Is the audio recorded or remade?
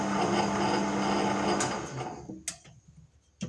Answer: recorded